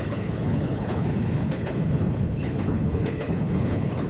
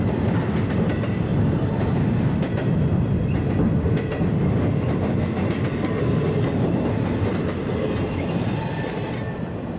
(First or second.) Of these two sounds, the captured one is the second